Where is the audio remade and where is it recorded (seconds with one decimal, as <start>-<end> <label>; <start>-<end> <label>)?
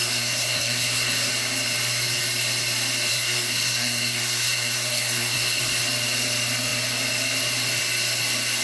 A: 0.0-1.3 remade; 1.3-3.1 recorded; 3.1-5.6 remade; 5.6-8.6 recorded